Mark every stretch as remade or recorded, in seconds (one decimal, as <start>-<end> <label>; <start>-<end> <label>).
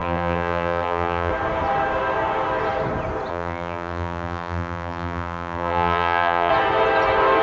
0.0-1.3 remade; 1.3-3.3 recorded; 3.3-6.5 remade; 6.5-7.4 recorded